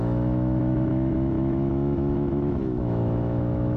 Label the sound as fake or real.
fake